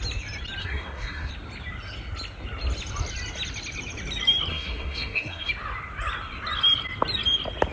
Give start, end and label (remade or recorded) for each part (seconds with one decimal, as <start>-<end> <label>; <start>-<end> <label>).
0.0-0.6 recorded; 0.6-1.3 remade; 1.3-4.5 recorded; 4.5-5.5 remade; 5.5-7.7 recorded